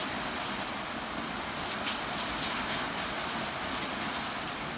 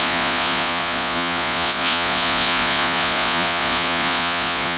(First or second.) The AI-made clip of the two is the second